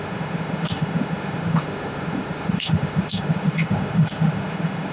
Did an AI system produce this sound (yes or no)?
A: yes